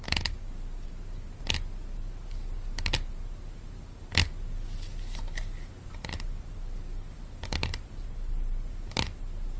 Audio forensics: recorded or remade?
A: recorded